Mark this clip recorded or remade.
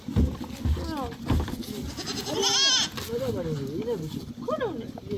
recorded